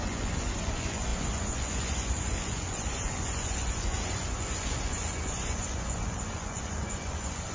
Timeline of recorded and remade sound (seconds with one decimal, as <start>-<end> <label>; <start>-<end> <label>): 0.0-7.5 remade

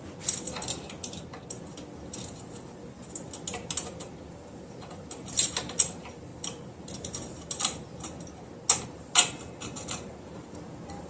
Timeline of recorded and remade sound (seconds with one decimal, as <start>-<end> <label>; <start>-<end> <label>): 0.0-11.1 recorded

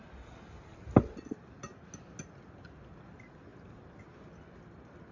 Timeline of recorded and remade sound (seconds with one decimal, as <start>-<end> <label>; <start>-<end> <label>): 0.0-5.1 recorded

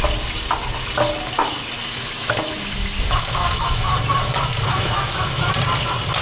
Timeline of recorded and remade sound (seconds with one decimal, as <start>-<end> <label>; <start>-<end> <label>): 0.0-1.8 recorded; 1.8-5.5 remade; 5.5-6.2 recorded

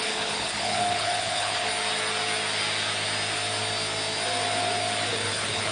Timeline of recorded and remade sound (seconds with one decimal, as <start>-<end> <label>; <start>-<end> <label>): 0.0-1.7 remade; 1.7-5.1 recorded; 5.1-5.7 remade